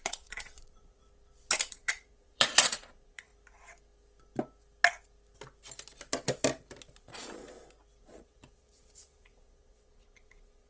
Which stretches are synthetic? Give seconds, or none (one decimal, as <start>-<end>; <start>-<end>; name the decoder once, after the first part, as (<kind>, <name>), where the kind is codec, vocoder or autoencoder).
0.0-1.0 (vocoder, Vocos); 1.7-3.3; 7.0-7.4; 8.0-10.7